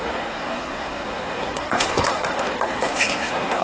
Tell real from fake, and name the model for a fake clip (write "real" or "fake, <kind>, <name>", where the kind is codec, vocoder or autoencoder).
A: fake, codec, SNAC